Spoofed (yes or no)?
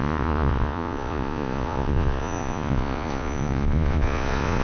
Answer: yes